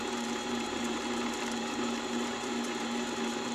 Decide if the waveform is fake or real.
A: fake